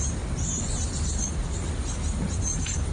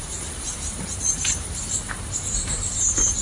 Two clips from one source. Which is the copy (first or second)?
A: second